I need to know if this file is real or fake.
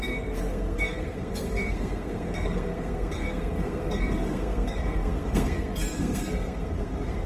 fake